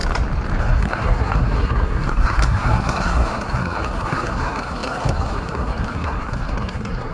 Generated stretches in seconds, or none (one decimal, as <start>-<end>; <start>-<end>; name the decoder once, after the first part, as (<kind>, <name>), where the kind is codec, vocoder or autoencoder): 0.6-7.1 (codec, SNAC)